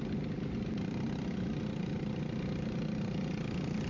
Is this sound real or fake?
real